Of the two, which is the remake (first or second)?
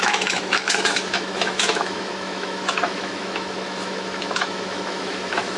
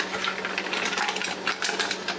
first